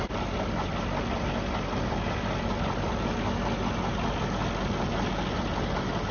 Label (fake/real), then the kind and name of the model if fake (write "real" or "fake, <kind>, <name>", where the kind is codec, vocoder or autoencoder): real